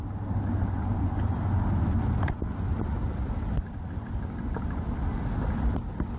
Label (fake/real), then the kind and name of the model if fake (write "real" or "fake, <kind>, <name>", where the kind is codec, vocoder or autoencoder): real